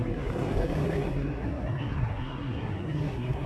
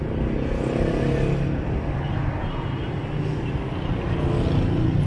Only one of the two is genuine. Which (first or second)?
second